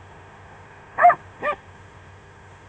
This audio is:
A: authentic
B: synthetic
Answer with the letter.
B